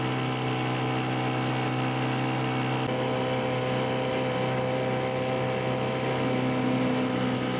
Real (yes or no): yes